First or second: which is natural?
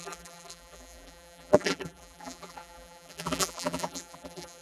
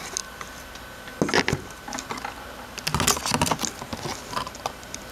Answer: second